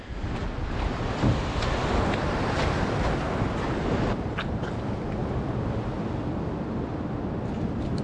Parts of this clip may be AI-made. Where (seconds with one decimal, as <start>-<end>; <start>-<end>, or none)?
none